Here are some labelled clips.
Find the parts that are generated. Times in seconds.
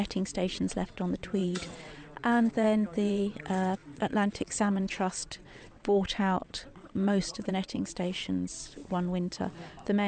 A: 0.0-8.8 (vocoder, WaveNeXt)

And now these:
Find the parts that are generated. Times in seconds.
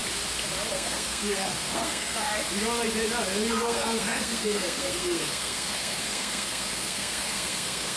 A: 0.7-2.3 (codec, SNAC); 3.5-8.0